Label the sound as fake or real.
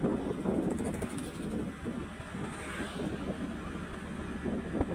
real